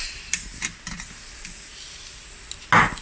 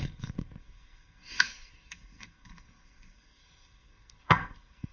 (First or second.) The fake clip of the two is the second